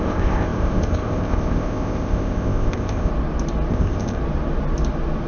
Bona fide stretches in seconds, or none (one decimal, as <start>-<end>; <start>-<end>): 3.1-3.7; 4.2-5.3